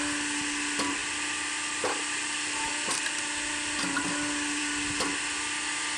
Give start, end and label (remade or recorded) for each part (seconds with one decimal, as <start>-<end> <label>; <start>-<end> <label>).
0.0-6.0 recorded